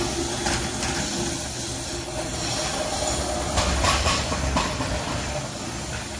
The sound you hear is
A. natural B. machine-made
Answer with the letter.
A